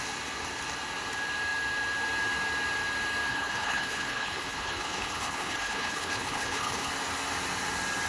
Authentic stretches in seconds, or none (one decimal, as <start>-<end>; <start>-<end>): 0.0-3.3; 6.9-8.1